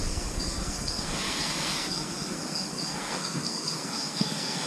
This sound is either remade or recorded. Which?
remade